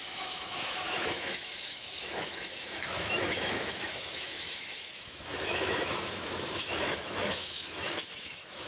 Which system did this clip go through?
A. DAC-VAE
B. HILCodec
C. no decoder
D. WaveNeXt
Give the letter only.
A